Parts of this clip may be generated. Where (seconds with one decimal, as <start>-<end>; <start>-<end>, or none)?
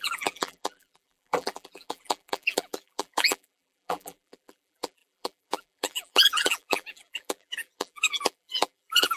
0.0-9.2